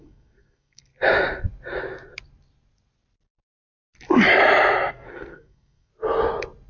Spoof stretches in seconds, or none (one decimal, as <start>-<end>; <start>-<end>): 0.0-0.9; 4.9-5.9